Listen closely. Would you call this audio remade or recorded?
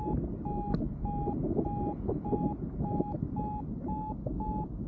recorded